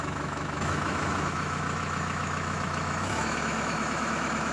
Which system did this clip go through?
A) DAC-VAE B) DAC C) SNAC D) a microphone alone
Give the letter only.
A